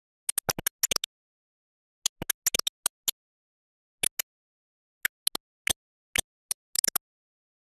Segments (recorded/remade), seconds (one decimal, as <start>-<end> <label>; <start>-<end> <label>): 0.0-7.7 recorded